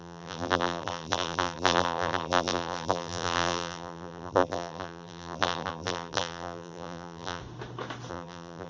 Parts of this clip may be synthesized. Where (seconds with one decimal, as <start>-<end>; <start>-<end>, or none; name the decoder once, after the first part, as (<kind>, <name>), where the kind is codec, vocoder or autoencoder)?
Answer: 0.0-7.4 (vocoder, BigVGAN v2); 8.1-8.7